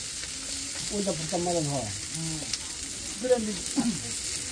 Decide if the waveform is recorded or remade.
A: recorded